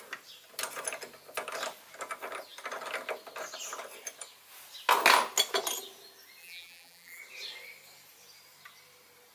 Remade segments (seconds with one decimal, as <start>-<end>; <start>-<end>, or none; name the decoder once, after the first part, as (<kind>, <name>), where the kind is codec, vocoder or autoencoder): 6.4-7.2 (vocoder, BigVGAN v2)